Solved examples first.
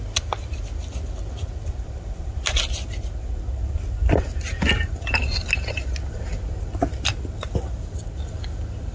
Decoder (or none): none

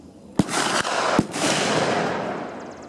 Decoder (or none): none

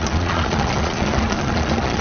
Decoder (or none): vocoder, Vocos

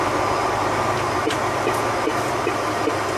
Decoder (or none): none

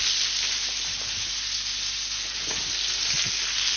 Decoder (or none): none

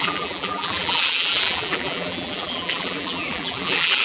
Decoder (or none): vocoder, BigVGAN v2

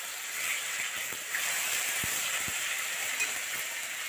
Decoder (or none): vocoder, BigVGAN v2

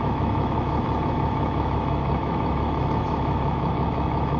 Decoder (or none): autoencoder, DAC-VAE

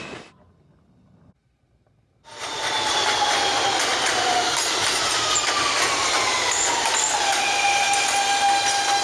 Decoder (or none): none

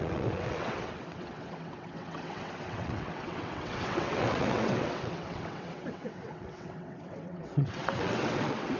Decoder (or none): vocoder, WaveNeXt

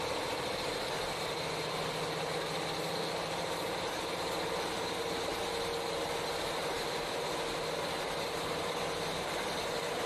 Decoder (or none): none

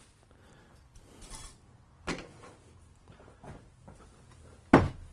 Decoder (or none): none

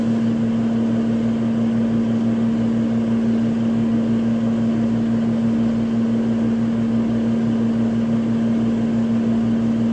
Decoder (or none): none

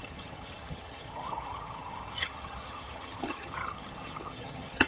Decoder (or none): vocoder, HiFi-GAN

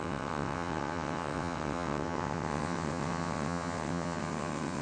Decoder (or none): vocoder, WaveNeXt